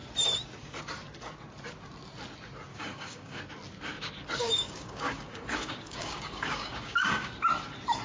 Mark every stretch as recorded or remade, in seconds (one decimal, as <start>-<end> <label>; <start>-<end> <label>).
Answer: 0.0-2.7 recorded; 2.7-3.4 remade; 3.4-4.4 recorded; 4.4-7.3 remade; 7.3-8.0 recorded